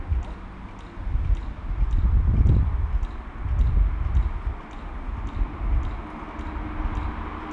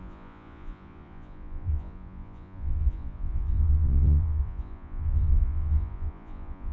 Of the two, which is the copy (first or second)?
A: second